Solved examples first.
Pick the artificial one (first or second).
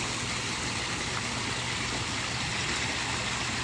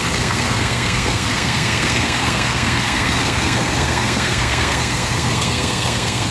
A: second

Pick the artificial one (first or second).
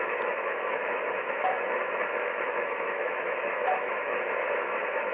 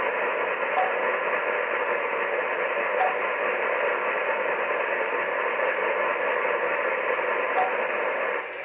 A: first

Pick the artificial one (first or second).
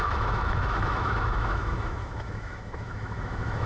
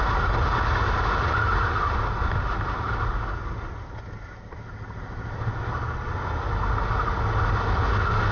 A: first